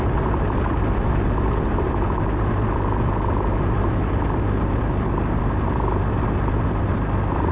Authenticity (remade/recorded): recorded